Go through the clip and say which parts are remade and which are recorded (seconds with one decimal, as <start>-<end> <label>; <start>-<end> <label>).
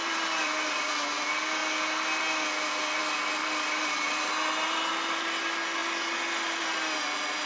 0.0-0.9 remade; 0.9-3.4 recorded; 3.4-4.9 remade; 4.9-7.5 recorded